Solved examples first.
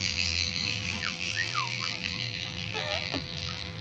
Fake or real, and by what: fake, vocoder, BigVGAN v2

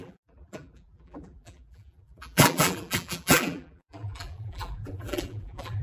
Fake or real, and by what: fake, vocoder, BigVGAN v2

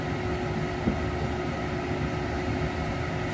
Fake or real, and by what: real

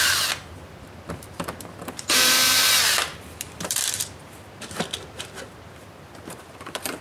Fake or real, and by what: fake, vocoder, BigVGAN v2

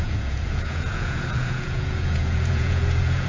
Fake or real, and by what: fake, vocoder, Vocos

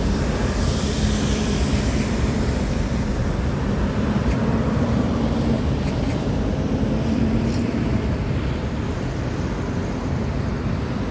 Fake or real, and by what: fake, vocoder, BigVGAN v2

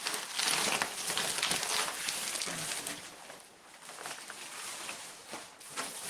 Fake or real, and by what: real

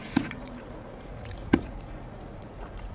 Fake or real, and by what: fake, vocoder, Vocos